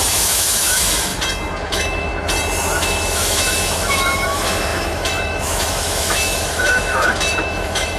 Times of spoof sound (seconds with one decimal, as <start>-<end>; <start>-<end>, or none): 0.0-1.1; 1.7-2.1; 2.8-8.0